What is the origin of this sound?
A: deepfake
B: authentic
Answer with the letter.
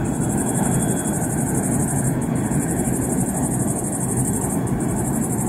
A